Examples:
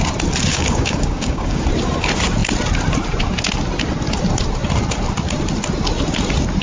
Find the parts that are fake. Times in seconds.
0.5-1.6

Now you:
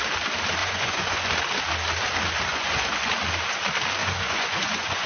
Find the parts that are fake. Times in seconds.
0.6-1.3; 2.5-3.1; 4.0-5.1

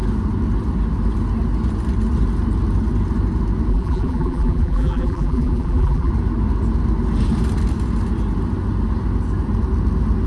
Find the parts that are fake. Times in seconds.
3.7-6.1

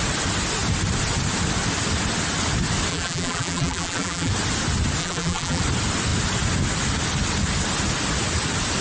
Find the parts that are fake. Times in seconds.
2.9-4.3; 5.0-5.6